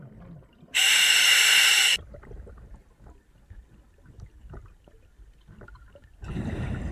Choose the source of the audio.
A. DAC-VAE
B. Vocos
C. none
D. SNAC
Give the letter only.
C